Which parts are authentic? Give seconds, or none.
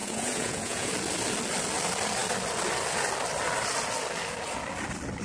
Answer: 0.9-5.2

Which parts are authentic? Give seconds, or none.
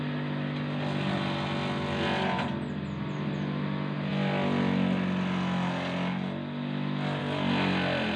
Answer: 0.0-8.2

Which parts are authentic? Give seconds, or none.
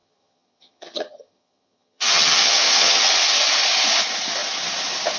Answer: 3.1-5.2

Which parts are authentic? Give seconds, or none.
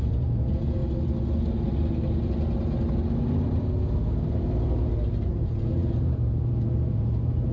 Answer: 0.8-5.3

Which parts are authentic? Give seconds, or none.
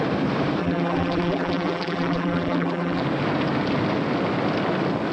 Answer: 0.0-0.6; 3.0-5.1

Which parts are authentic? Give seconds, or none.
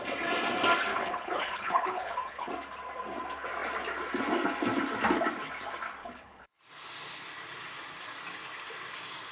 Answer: 0.0-0.9; 2.5-6.0; 6.6-9.3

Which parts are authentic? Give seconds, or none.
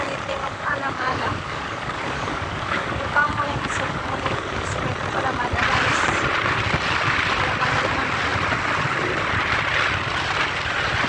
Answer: 0.0-0.4; 4.8-11.1